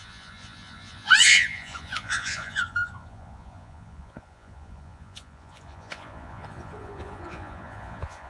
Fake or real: fake